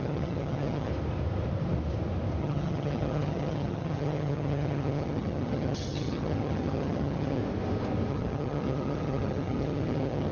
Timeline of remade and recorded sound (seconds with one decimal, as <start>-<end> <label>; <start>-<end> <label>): 0.0-0.9 remade; 0.9-2.4 recorded; 2.4-7.4 remade; 7.4-8.1 recorded; 8.1-10.3 remade